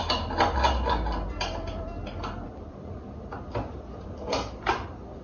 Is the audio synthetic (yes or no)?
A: no